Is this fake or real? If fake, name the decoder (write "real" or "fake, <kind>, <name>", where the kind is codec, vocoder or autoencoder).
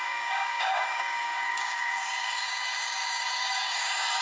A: fake, codec, DAC